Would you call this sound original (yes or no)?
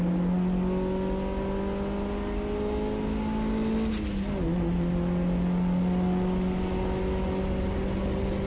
yes